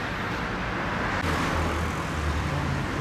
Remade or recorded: recorded